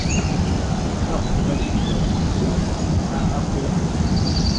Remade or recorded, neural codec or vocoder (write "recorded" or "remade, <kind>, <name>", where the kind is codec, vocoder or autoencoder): recorded